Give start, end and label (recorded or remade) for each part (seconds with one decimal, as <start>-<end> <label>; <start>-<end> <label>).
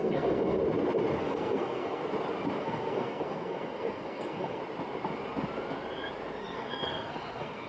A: 0.0-0.6 remade; 0.6-1.2 recorded; 1.2-2.0 remade; 2.0-2.6 recorded; 2.6-4.6 remade; 4.6-6.4 recorded; 6.4-7.7 remade